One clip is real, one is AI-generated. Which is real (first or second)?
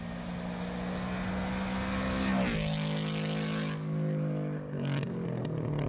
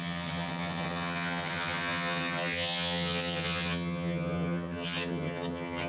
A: first